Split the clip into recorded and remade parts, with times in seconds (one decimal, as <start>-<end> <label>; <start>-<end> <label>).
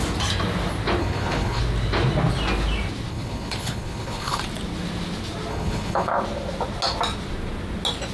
0.0-1.0 recorded; 1.0-1.6 remade; 1.6-3.1 recorded; 3.1-4.4 remade; 4.4-5.5 recorded; 5.5-6.1 remade; 6.1-8.1 recorded